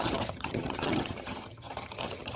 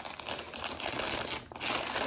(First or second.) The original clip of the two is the second